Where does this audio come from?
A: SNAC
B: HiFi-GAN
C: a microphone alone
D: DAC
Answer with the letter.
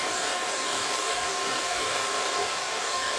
D